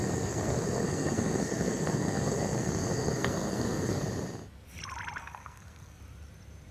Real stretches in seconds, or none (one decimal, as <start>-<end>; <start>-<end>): 4.0-5.2; 6.0-6.7